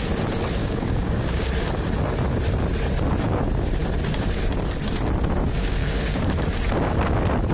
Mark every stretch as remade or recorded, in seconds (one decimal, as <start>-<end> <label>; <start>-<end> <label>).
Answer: 0.0-0.6 recorded; 0.6-1.5 remade; 1.5-5.8 recorded; 5.8-6.3 remade; 6.3-7.5 recorded